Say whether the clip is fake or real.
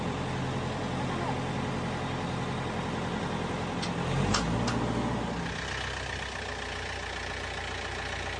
real